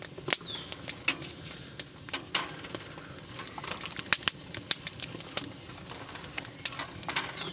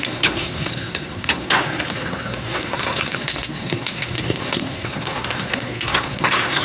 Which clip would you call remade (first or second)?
second